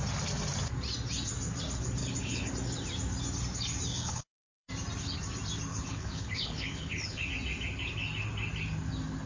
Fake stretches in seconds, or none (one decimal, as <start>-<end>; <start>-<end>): 2.0-2.5; 3.9-4.7; 5.7-7.3